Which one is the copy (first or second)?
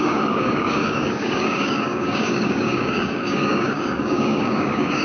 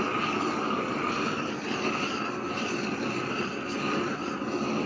first